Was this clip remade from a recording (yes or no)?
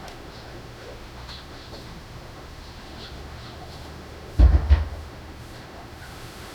yes